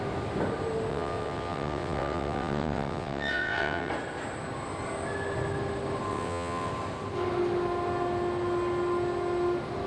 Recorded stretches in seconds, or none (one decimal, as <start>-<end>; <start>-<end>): 0.0-0.9; 3.9-6.1; 6.7-9.9